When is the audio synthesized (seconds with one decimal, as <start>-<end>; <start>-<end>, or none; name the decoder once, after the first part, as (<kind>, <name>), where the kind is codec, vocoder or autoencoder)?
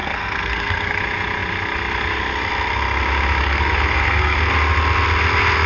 0.0-1.0 (codec, SNAC); 3.4-4.5